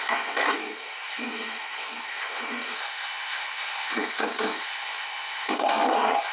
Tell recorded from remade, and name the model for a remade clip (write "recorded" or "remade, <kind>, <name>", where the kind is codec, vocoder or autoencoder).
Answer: remade, codec, SNAC